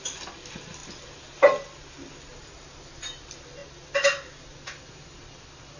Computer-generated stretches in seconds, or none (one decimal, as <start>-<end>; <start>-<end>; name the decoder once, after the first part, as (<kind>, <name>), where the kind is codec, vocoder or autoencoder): 2.3-3.0 (vocoder, BigVGAN v2)